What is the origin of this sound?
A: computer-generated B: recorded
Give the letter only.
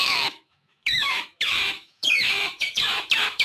A